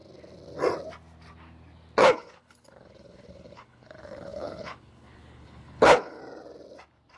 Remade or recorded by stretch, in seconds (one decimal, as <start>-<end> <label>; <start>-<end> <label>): 0.0-2.0 recorded; 2.0-6.2 remade; 6.2-7.2 recorded